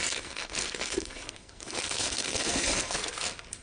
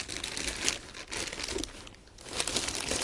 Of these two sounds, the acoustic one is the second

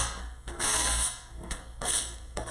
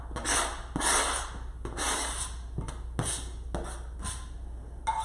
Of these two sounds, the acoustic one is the second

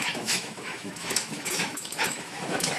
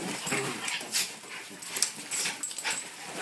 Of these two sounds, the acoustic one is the second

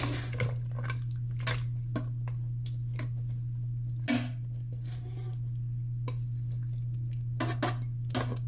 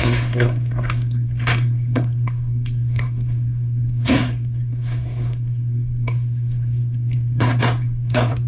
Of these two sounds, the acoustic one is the first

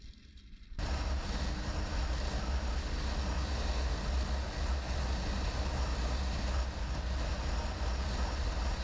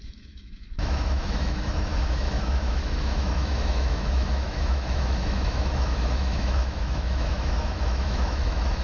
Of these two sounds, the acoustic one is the first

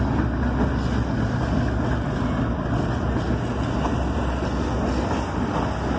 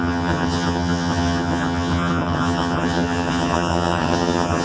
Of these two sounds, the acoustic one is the first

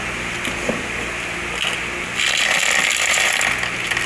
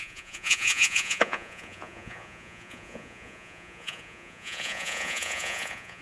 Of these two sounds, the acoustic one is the first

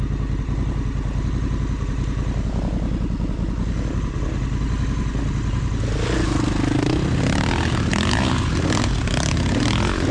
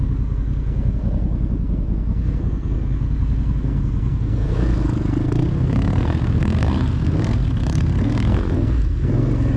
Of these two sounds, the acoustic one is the first